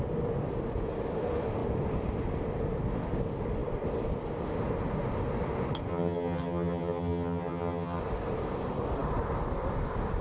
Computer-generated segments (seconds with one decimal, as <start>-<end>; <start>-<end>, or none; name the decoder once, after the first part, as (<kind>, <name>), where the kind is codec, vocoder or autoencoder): 5.9-8.0 (vocoder, HiFi-GAN)